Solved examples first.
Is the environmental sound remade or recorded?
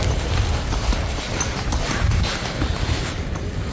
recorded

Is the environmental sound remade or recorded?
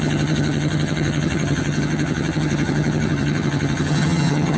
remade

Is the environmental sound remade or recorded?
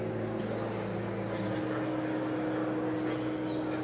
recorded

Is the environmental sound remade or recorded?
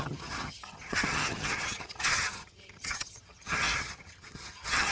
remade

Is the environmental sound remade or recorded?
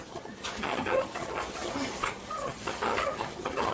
remade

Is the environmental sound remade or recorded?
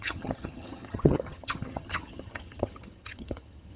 remade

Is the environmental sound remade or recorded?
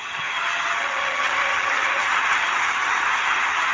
remade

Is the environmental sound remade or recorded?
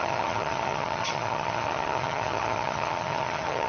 remade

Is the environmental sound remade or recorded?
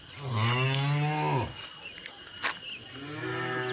recorded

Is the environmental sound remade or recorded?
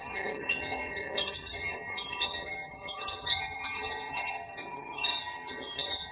remade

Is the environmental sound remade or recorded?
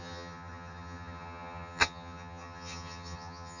remade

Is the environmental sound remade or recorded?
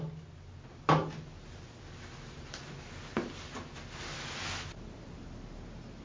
recorded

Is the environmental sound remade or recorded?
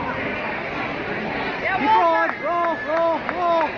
recorded